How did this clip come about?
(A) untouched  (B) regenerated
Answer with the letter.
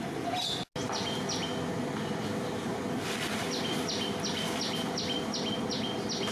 A